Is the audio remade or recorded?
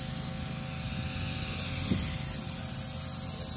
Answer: recorded